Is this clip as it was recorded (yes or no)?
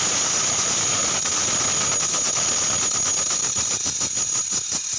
yes